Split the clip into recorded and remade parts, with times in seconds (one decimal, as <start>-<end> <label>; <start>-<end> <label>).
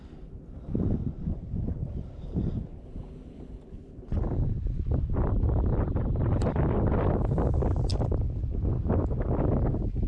0.0-7.9 remade; 7.9-10.1 recorded